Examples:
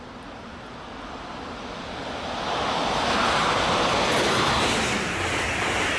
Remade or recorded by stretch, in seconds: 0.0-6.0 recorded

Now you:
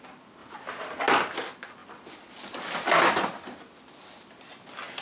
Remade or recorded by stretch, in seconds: 0.0-5.0 recorded

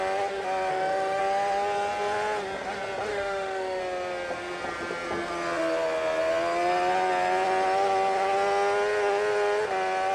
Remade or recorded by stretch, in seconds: 0.0-0.7 recorded; 0.7-1.2 remade; 1.2-3.1 recorded; 3.1-3.8 remade; 3.8-10.1 recorded

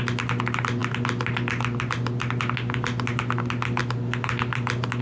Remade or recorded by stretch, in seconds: 0.0-5.0 recorded